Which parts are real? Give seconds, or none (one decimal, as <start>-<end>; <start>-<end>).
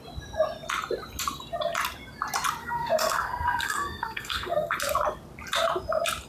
0.0-2.6; 4.7-6.3